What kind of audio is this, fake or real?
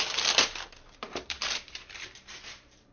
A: fake